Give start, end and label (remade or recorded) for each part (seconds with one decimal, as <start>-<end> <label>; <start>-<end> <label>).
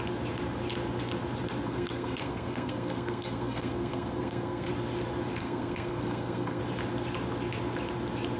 0.0-1.7 recorded; 1.7-4.7 remade; 4.7-5.4 recorded; 5.4-6.6 remade; 6.6-8.4 recorded